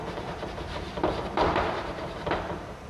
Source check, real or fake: fake